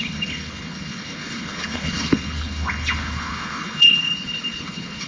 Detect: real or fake fake